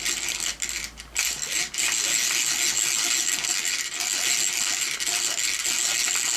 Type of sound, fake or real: real